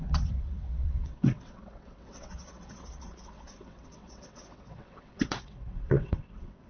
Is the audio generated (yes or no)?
yes